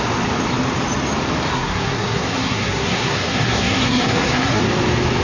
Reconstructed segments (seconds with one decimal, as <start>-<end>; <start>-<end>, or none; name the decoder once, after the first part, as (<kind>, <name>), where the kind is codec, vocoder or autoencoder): 1.5-4.6 (codec, SNAC)